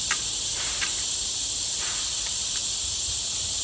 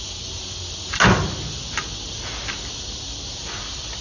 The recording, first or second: second